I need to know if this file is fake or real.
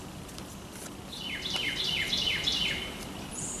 real